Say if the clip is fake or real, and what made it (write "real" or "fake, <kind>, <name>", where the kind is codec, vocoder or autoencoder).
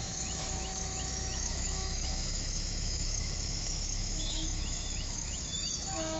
fake, autoencoder, DAC-VAE